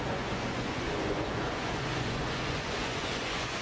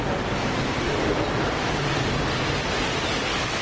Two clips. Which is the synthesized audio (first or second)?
first